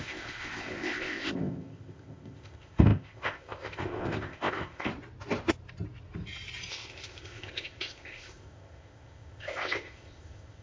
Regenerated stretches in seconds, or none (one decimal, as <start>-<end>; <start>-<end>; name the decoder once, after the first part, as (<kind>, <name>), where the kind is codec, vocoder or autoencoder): 0.0-4.9 (codec, ZipCodec); 6.7-10.6